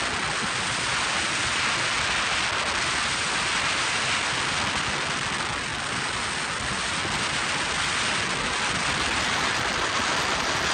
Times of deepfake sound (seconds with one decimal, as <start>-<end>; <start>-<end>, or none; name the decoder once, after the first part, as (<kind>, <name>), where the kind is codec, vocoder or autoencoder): none